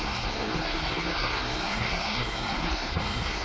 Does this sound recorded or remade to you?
remade